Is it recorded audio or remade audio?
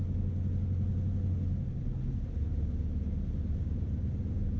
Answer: recorded